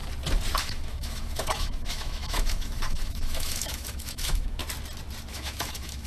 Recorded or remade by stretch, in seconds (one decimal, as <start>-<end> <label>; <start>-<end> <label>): 0.0-0.6 recorded; 0.6-4.6 remade; 4.6-5.3 recorded; 5.3-6.1 remade